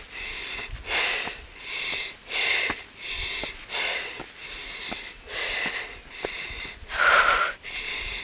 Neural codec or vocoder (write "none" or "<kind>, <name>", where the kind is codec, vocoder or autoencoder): none